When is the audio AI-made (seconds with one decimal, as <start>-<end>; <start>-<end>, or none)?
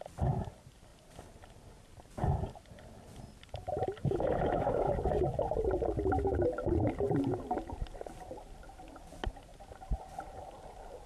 4.0-4.9